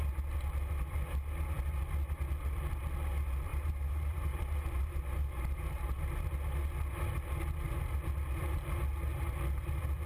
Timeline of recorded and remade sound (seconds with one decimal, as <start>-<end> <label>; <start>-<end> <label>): 0.0-3.5 recorded; 3.5-6.0 remade; 6.0-10.1 recorded